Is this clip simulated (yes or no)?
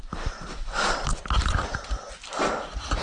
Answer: no